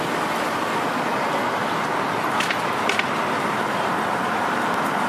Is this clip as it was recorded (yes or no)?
yes